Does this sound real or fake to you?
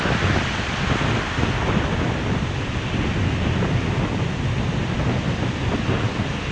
real